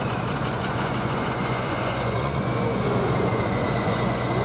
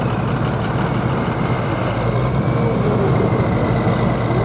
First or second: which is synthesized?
first